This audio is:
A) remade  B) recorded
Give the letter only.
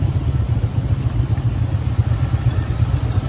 B